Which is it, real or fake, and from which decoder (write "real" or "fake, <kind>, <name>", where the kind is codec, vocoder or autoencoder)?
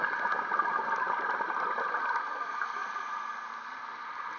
real